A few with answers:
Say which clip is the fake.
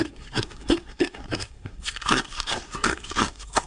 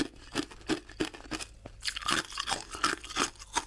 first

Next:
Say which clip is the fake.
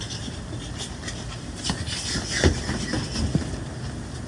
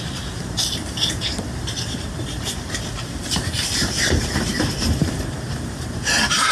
second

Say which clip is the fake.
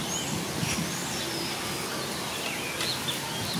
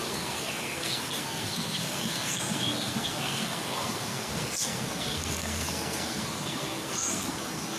second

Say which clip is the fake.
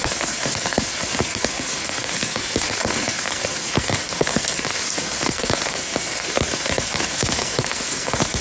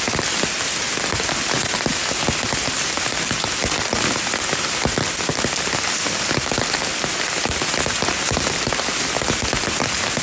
first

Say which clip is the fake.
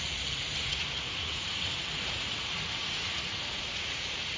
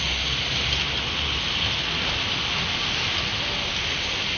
first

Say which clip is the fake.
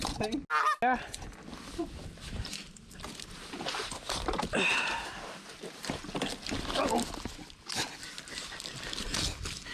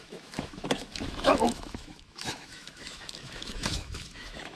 second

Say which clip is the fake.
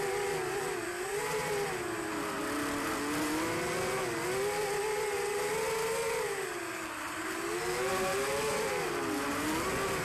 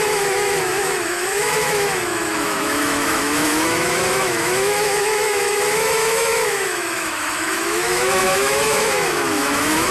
second